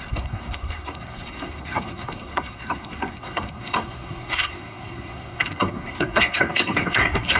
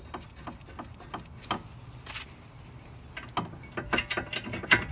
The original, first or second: second